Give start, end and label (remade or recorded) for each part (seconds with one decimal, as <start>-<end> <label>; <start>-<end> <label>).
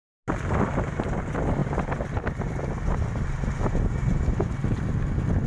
0.0-5.5 recorded